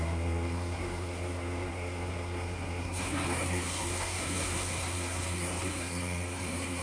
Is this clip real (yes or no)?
no